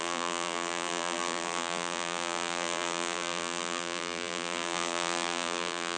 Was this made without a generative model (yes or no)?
no